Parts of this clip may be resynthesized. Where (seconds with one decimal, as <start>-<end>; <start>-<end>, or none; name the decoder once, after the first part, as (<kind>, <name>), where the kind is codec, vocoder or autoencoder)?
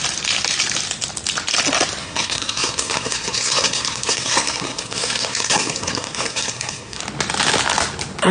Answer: 2.0-7.0 (codec, SNAC)